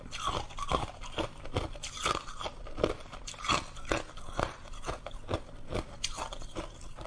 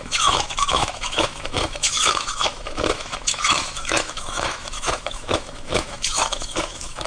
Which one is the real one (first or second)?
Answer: first